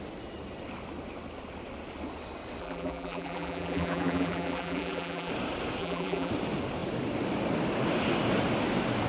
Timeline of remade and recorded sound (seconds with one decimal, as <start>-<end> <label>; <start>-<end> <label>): 0.0-2.6 recorded; 2.6-5.3 remade; 5.3-5.8 recorded; 5.8-6.3 remade; 6.3-9.1 recorded